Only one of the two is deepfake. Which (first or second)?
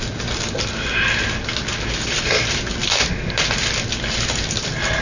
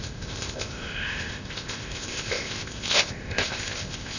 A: second